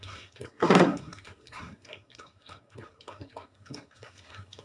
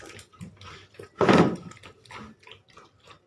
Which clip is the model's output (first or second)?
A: first